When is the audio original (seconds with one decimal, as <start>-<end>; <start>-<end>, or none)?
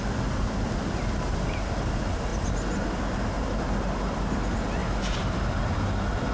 0.0-6.3